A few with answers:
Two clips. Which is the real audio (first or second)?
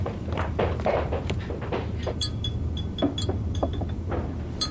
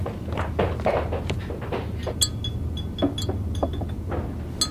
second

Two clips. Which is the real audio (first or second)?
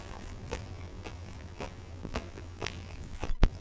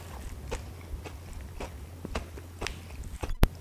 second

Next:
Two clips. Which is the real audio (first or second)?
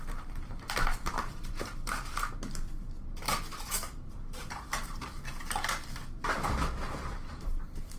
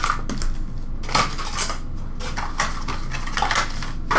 second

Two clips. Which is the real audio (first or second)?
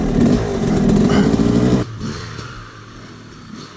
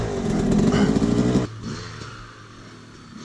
second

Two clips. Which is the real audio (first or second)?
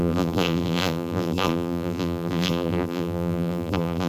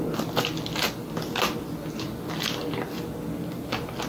second